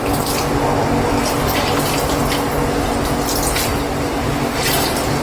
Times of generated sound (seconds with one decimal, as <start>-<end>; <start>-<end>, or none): none